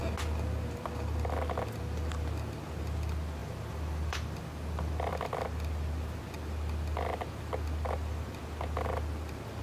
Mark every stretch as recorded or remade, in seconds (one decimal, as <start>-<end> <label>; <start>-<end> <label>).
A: 0.0-3.4 recorded; 3.4-5.1 remade; 5.1-9.6 recorded

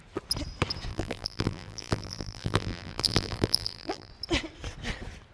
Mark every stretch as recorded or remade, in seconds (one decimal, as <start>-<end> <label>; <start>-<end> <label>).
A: 0.0-0.9 recorded; 0.9-4.1 remade; 4.1-5.3 recorded

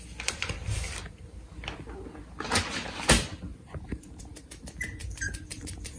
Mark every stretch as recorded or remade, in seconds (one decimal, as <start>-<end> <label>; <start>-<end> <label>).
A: 0.0-3.5 recorded; 3.5-4.4 remade; 4.4-5.0 recorded; 5.0-6.0 remade

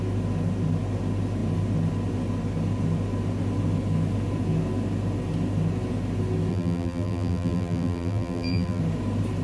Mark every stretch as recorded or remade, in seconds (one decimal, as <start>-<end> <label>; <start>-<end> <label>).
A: 0.0-6.5 recorded; 6.5-8.8 remade; 8.8-9.4 recorded

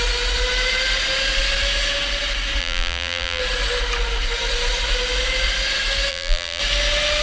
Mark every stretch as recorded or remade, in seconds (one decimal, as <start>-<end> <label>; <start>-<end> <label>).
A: 0.0-2.6 recorded; 2.6-3.4 remade; 3.4-6.1 recorded; 6.1-6.6 remade; 6.6-7.2 recorded

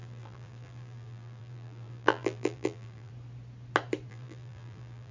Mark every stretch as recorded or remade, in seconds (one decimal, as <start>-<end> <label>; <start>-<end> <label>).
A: 0.0-3.1 remade; 3.1-4.1 recorded; 4.1-5.1 remade